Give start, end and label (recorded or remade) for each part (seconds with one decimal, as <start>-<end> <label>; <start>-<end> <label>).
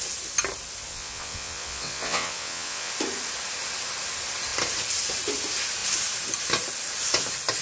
0.0-0.9 recorded; 0.9-2.9 remade; 2.9-7.6 recorded